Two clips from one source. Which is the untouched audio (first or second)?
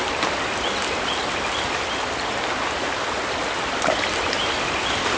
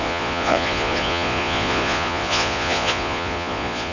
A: first